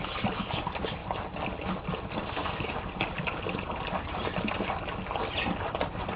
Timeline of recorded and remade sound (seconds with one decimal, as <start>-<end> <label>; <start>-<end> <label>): 0.0-6.2 recorded